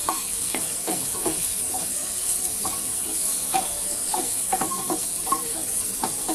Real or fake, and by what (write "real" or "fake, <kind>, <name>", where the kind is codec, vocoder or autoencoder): fake, codec, SNAC